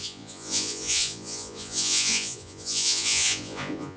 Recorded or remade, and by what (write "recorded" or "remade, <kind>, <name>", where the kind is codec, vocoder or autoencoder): remade, vocoder, Vocos